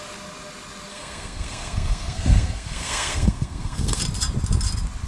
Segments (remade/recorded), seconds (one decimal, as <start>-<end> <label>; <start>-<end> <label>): 0.0-0.9 recorded; 0.9-4.0 remade; 4.0-5.1 recorded